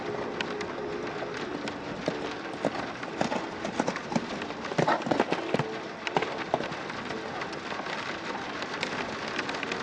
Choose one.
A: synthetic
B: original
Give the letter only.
B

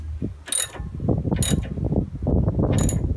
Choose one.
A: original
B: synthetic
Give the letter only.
A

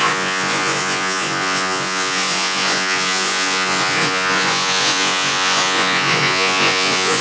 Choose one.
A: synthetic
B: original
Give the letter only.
A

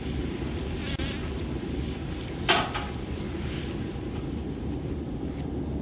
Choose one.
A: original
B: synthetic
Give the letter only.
A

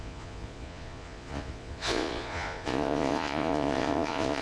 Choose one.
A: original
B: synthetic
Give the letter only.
B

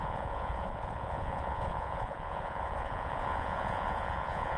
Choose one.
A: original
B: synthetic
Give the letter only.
B